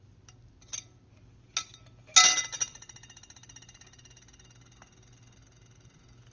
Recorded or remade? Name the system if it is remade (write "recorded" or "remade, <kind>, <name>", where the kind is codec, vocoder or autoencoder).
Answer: recorded